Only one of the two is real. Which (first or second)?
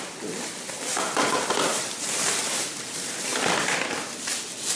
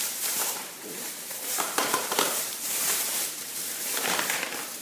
first